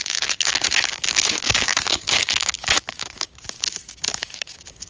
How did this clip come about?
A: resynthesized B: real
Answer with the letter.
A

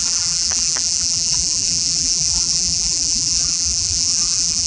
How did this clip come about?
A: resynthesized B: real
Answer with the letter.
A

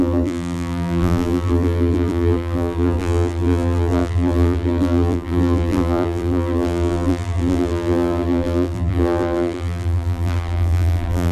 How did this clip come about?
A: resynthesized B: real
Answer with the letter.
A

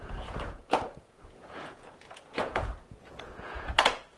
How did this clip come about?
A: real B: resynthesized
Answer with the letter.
B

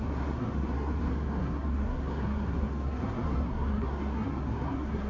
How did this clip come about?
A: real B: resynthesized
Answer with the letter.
B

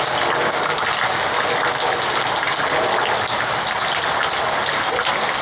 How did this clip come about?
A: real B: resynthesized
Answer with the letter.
A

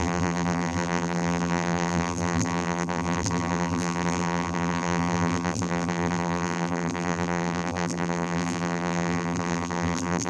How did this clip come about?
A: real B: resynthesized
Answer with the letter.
B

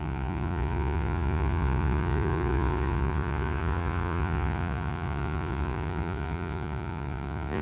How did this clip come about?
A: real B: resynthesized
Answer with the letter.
B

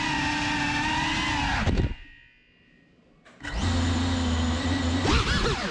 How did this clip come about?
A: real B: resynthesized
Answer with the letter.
A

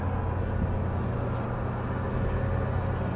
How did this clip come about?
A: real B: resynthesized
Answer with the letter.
A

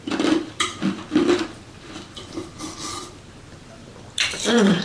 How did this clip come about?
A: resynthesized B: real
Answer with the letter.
A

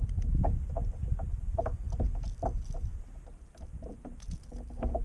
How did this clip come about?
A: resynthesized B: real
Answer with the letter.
B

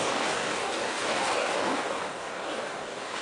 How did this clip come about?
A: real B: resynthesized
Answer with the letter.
B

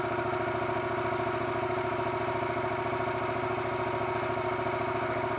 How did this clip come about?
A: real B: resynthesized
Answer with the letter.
A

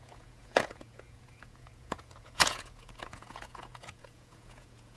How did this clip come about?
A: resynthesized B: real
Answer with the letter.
A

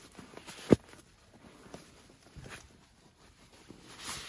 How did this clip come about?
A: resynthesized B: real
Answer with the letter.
B